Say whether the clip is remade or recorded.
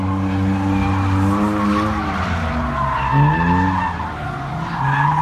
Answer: recorded